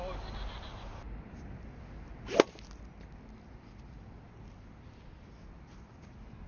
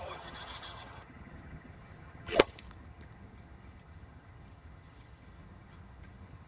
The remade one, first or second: second